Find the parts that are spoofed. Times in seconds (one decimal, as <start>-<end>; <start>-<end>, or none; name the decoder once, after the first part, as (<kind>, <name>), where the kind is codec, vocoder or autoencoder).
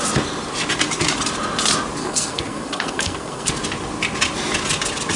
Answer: 2.0-3.5 (codec, SNAC)